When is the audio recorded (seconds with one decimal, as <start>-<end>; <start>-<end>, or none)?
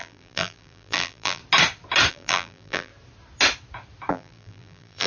1.4-2.1; 2.9-4.1